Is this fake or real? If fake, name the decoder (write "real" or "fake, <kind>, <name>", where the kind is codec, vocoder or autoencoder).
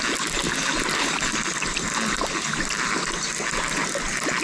real